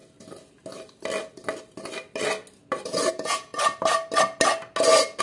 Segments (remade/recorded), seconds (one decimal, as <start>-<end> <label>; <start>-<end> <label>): 0.0-3.1 recorded; 3.1-3.5 remade; 3.5-5.2 recorded